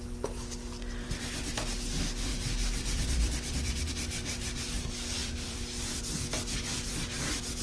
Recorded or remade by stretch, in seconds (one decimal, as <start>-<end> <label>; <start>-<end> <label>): 0.0-2.3 recorded; 2.3-3.9 remade; 3.9-5.2 recorded; 5.2-6.0 remade; 6.0-7.6 recorded